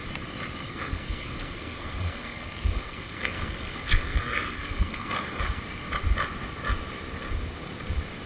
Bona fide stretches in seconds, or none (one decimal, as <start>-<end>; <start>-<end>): 0.0-0.6; 5.6-8.3